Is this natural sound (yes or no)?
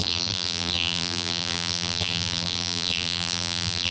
no